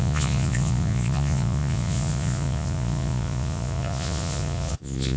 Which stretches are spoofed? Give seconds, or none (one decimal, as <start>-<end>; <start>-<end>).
0.0-5.2